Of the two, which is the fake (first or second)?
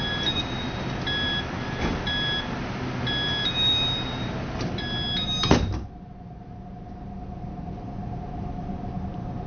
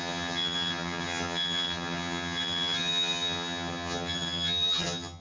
second